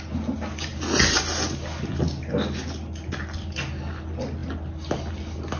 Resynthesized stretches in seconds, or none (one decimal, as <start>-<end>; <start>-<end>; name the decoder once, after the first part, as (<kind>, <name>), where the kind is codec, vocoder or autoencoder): none